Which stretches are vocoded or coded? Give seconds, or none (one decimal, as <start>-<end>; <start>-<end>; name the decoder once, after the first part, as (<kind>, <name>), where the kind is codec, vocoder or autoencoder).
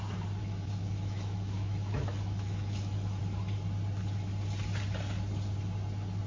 0.4-3.2 (autoencoder, DAC-VAE)